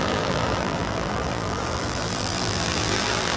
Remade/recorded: remade